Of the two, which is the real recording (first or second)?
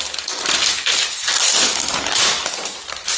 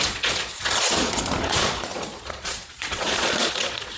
first